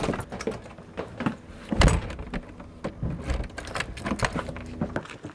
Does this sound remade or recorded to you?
recorded